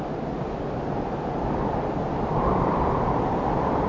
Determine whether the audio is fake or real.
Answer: fake